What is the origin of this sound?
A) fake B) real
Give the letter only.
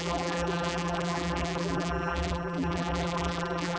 A